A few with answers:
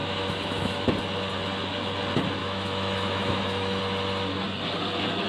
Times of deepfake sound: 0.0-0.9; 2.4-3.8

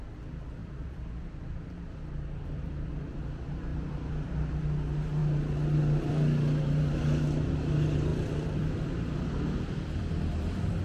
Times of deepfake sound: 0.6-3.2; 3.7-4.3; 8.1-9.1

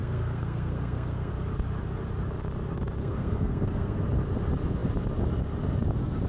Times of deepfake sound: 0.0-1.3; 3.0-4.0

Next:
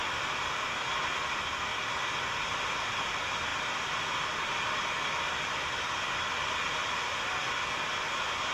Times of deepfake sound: none

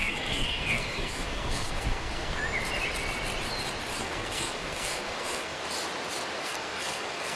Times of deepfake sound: 0.0-2.4; 4.0-5.6; 6.4-7.4

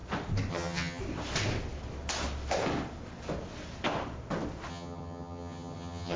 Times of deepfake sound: 0.5-1.0; 4.7-6.2

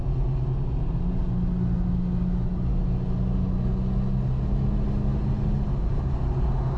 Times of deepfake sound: none

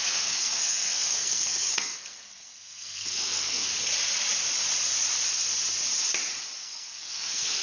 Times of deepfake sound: 0.0-3.7; 6.6-7.6